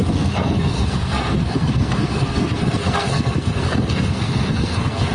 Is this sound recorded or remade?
remade